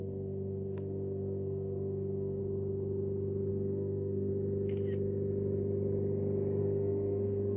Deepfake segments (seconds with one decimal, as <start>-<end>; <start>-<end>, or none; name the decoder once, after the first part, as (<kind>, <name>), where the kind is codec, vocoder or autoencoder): 0.0-2.4 (codec, SNAC); 3.5-4.3; 6.6-7.6

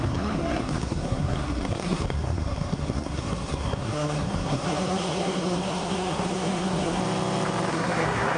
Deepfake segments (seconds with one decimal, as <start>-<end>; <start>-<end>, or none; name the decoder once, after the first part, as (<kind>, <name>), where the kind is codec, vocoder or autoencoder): 0.0-7.0 (codec, SNAC); 7.7-8.4

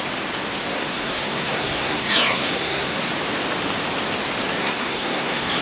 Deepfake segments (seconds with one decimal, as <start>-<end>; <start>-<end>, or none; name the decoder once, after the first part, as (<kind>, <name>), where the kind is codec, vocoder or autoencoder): 0.7-3.1 (codec, SNAC); 4.6-5.6

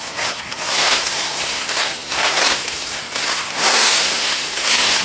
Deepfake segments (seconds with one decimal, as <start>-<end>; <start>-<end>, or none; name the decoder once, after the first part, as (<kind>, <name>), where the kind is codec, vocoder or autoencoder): 0.0-5.0 (codec, SNAC)